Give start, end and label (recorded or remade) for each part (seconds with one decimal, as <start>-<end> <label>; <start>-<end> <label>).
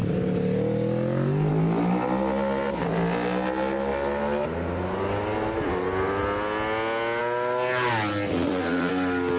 0.0-8.3 recorded; 8.3-8.9 remade; 8.9-9.4 recorded